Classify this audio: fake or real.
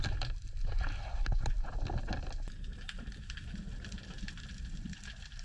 real